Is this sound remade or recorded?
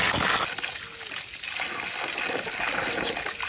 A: recorded